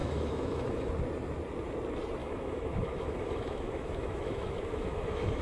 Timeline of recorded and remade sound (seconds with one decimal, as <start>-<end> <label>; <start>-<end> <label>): 0.0-0.9 remade; 0.9-2.2 recorded; 2.2-5.4 remade